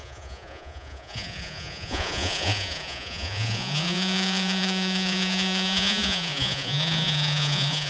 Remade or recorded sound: remade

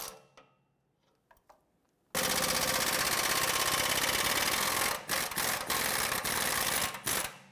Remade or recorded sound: recorded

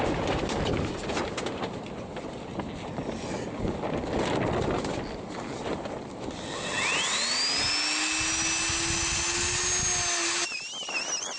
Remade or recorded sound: recorded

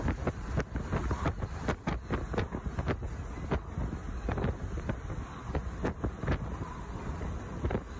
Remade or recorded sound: recorded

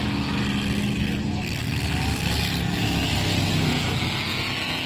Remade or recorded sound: recorded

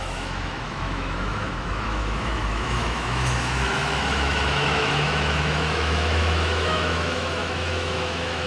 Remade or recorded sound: remade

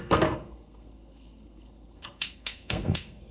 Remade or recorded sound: remade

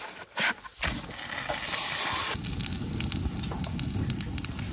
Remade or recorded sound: recorded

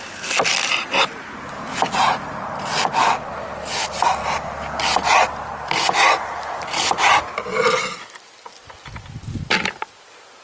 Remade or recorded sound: recorded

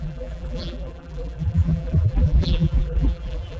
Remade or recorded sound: remade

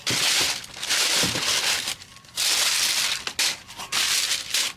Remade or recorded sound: recorded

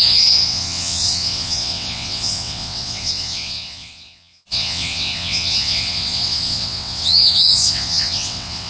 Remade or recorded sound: remade